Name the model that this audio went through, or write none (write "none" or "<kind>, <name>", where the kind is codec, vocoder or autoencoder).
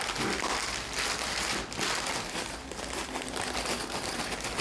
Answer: none